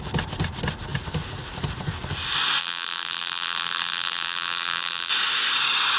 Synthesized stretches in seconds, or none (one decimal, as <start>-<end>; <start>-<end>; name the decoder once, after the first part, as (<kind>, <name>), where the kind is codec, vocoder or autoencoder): 2.6-5.1 (vocoder, BigVGAN v2)